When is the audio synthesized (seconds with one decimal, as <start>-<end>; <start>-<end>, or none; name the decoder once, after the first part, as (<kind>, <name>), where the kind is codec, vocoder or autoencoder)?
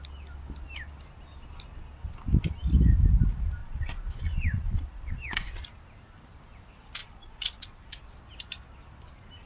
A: 3.6-5.6 (vocoder, Vocos); 7.0-8.1